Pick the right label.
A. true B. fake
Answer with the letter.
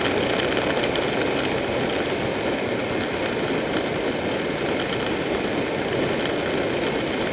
A